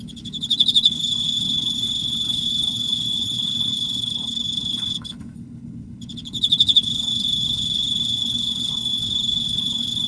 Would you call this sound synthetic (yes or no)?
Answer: yes